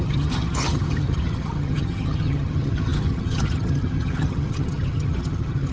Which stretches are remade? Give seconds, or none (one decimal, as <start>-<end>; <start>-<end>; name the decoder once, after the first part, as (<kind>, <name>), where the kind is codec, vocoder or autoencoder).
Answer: 0.0-5.7 (vocoder, HiFi-GAN)

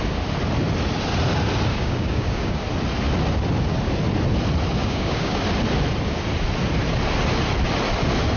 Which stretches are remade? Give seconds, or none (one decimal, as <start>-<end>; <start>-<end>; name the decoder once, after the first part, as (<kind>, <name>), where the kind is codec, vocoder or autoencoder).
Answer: 1.7-2.6 (codec, DAC); 4.8-5.4